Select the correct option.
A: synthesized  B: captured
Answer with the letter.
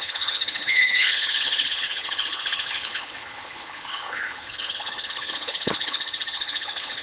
A